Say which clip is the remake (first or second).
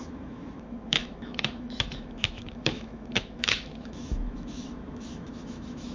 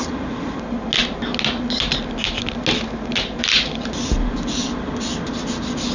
first